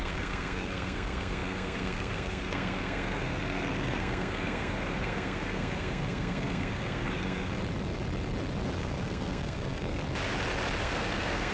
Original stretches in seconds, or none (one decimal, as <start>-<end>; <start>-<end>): 7.6-8.8; 10.0-10.8